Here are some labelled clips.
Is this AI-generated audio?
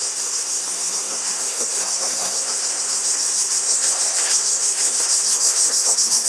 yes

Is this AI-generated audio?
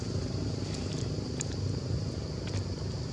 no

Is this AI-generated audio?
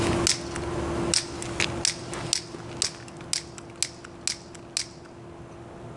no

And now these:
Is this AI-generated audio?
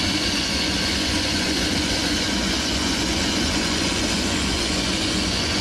yes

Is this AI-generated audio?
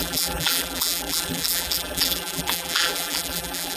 yes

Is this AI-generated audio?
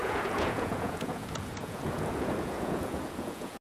yes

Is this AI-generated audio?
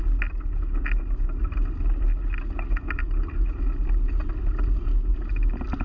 no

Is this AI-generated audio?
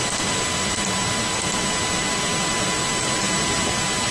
no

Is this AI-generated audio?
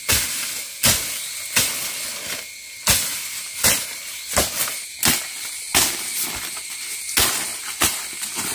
no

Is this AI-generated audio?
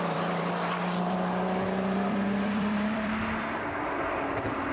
yes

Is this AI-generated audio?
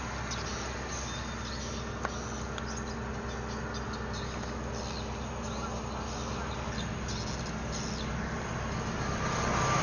no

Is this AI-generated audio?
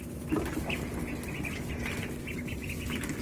no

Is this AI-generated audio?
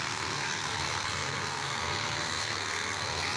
yes